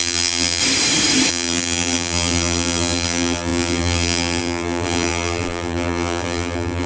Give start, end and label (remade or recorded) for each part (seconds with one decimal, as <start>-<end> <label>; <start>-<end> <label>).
0.0-0.6 remade; 0.6-1.3 recorded; 1.3-6.9 remade